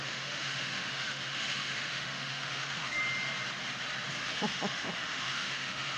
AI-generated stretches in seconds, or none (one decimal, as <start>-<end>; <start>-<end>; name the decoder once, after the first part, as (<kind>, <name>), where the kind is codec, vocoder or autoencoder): 0.0-3.0 (autoencoder, DAC-VAE); 4.2-6.0